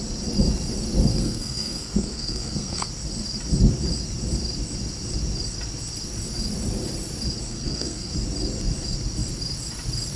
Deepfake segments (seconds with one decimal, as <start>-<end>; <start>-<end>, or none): 1.1-2.9; 7.5-8.1